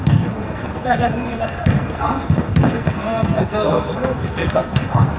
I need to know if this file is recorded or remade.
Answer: remade